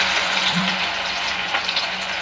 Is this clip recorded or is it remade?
remade